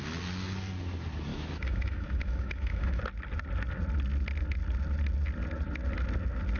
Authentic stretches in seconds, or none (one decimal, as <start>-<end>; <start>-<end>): 0.0-1.3; 3.0-6.6